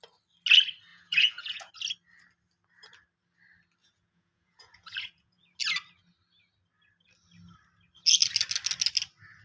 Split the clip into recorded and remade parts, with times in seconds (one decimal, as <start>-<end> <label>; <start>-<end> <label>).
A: 0.0-0.9 recorded; 0.9-1.7 remade; 1.7-3.8 recorded; 3.8-5.6 remade; 5.6-9.4 recorded